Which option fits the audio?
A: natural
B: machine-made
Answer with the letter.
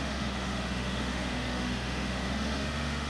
B